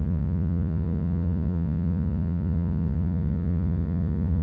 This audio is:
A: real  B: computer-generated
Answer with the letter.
B